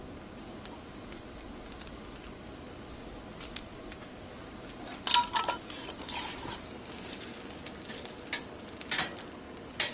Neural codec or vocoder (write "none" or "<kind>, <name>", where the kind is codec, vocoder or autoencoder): none